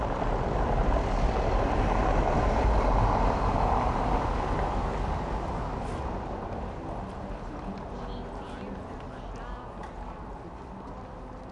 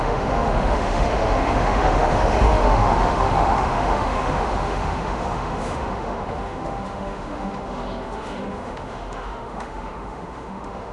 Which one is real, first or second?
first